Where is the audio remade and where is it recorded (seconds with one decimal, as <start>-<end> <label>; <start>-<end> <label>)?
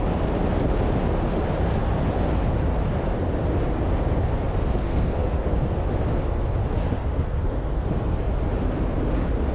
0.0-4.8 recorded; 4.8-5.8 remade; 5.8-7.0 recorded; 7.0-8.3 remade; 8.3-9.5 recorded